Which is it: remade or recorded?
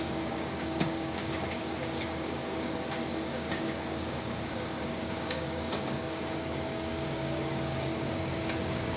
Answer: remade